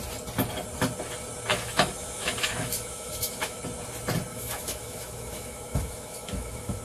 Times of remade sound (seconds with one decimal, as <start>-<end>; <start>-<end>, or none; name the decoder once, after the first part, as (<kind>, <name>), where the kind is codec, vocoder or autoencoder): 1.5-3.6 (autoencoder, DAC-VAE); 4.3-6.8